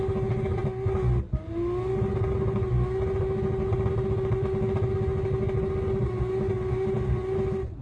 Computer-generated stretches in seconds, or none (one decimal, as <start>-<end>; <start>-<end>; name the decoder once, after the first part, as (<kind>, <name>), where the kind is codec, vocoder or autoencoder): none